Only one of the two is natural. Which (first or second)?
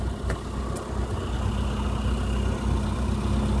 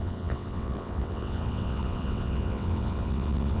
first